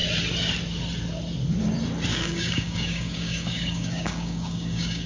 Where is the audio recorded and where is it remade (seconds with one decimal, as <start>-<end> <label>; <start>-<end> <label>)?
0.0-2.1 recorded; 2.1-5.1 remade